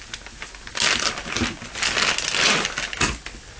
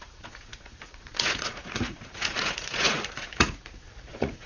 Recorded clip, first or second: first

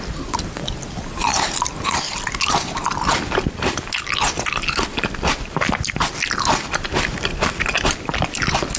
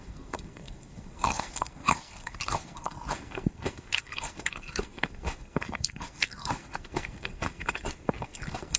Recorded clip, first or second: first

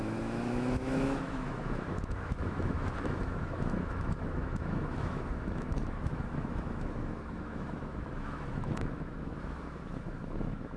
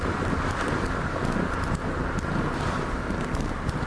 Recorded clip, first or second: second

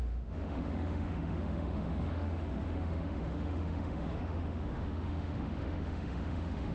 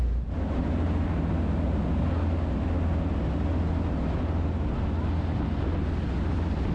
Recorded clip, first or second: second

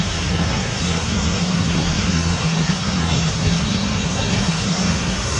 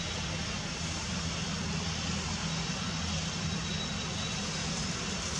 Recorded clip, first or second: second